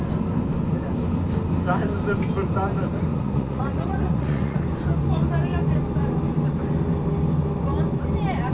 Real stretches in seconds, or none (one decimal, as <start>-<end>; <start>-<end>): 0.0-3.1; 4.6-8.5